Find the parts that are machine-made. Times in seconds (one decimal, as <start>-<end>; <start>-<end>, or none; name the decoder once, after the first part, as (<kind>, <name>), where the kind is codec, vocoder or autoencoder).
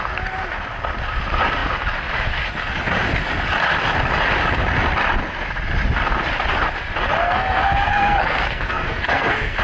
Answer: 7.2-9.6 (codec, SNAC)